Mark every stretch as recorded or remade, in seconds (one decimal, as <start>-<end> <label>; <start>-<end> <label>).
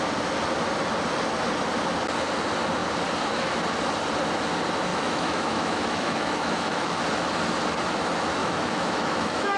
0.0-4.9 recorded; 4.9-7.0 remade; 7.0-8.4 recorded; 8.4-9.6 remade